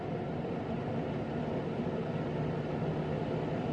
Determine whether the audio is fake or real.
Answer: real